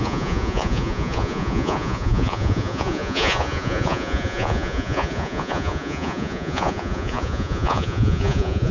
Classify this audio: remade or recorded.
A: remade